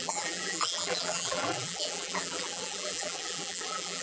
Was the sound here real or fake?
fake